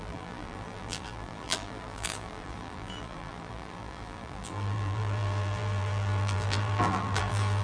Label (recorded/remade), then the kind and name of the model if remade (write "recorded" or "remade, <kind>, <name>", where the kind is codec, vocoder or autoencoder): remade, vocoder, BigVGAN v2